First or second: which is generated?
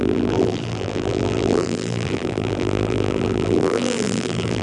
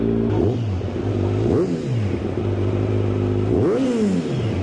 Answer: first